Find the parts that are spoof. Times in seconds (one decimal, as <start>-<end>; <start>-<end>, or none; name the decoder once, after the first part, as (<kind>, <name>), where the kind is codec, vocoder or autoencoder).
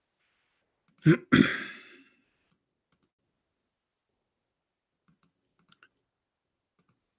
none